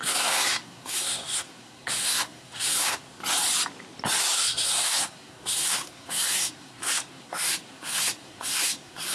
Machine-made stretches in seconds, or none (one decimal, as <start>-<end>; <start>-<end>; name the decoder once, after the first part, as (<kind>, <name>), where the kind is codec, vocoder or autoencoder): 0.0-3.2 (codec, SNAC); 4.2-9.1